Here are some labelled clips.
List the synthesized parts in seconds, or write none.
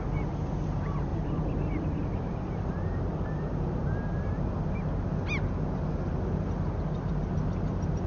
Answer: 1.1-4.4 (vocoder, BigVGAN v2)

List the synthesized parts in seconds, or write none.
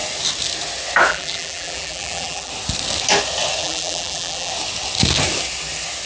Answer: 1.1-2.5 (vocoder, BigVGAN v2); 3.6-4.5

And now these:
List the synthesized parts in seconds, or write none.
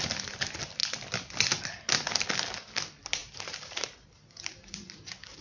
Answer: 3.2-5.4 (vocoder, BigVGAN v2)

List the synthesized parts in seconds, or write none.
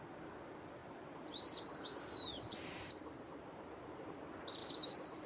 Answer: 0.8-3.7 (vocoder, BigVGAN v2); 4.6-5.3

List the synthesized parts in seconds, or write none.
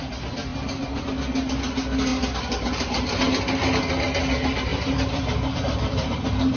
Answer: 2.1-3.2 (vocoder, BigVGAN v2); 4.7-6.6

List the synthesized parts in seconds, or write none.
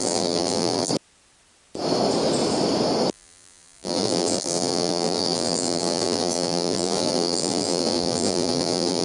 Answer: 0.0-0.9 (vocoder, BigVGAN v2); 3.1-9.0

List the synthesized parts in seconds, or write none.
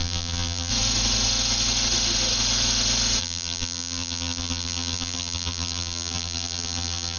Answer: 0.0-0.7 (vocoder, BigVGAN v2); 3.2-7.2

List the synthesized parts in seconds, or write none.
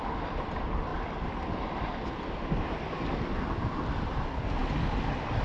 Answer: 0.0-4.6 (vocoder, BigVGAN v2)